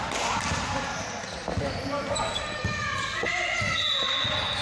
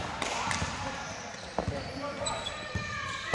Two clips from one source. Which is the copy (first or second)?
second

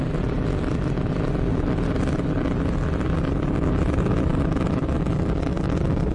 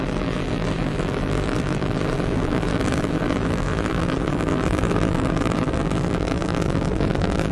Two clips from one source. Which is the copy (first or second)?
second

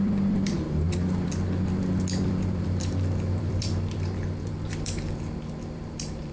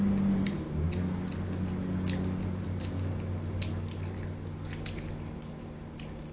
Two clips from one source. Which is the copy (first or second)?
first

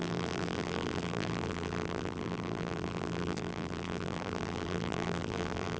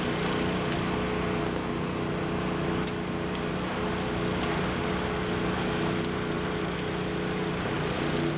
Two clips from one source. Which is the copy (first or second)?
first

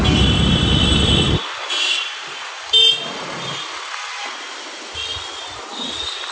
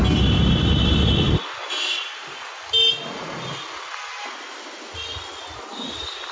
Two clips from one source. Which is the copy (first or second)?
first